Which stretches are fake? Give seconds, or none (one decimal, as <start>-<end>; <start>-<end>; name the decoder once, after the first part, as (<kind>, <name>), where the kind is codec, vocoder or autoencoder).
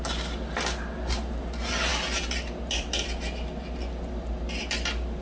none